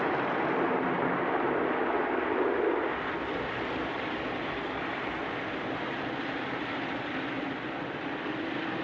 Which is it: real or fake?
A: real